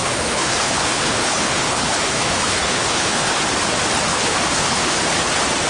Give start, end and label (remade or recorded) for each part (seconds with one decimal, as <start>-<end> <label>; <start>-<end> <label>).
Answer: 0.0-3.4 remade; 3.4-4.1 recorded; 4.1-5.0 remade; 5.0-5.7 recorded

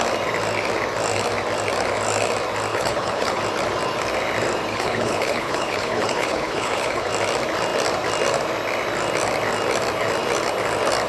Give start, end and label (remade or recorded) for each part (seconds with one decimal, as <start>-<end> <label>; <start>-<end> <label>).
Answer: 0.0-2.7 recorded; 2.7-3.4 remade; 3.4-4.7 recorded; 4.7-7.1 remade; 7.1-11.1 recorded